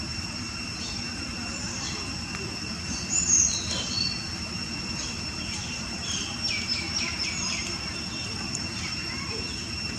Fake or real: fake